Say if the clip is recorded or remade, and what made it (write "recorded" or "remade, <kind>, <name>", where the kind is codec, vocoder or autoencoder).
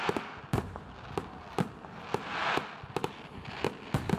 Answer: recorded